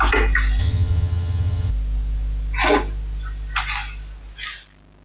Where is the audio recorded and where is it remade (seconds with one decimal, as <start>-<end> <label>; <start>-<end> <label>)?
0.0-0.6 recorded; 0.6-1.7 remade; 1.7-5.0 recorded